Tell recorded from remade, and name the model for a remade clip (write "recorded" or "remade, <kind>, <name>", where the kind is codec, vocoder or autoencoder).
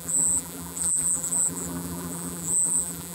remade, vocoder, BigVGAN v2